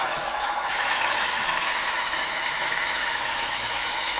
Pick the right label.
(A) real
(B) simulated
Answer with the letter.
B